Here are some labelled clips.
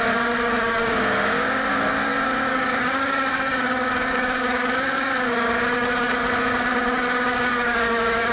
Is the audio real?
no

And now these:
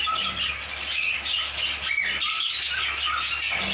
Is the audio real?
yes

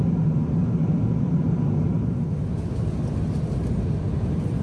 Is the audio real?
yes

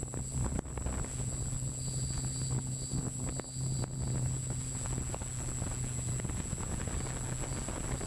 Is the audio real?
yes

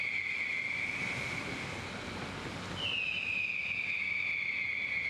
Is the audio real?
yes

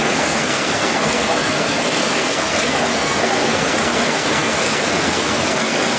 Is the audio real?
no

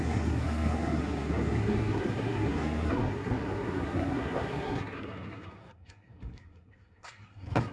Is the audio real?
no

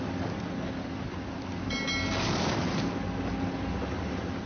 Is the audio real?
yes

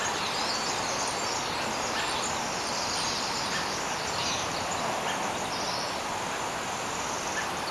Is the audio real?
yes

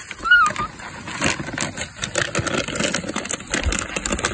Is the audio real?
yes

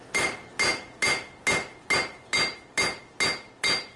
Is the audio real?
yes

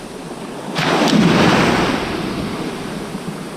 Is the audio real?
yes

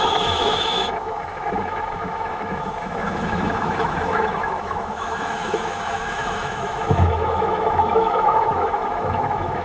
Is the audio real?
no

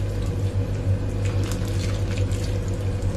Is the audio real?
yes